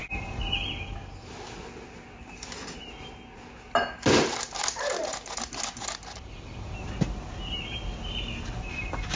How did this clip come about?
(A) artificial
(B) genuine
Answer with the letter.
B